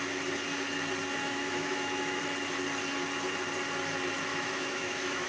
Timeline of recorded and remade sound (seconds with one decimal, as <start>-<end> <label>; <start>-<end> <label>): 0.0-1.2 recorded; 1.2-2.2 remade; 2.2-4.3 recorded; 4.3-5.3 remade